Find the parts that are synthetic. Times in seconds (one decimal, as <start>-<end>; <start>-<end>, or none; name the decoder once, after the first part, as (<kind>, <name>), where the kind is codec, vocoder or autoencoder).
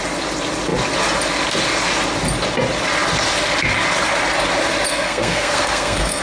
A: 4.9-6.2 (codec, SNAC)